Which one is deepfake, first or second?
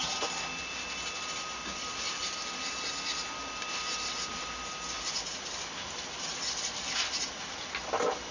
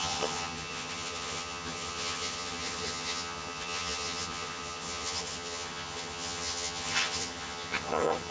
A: second